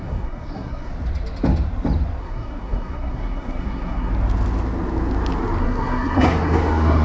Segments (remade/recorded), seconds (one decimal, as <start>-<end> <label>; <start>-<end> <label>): 0.0-0.9 remade; 0.9-2.2 recorded; 2.2-4.1 remade; 4.1-5.6 recorded; 5.6-7.0 remade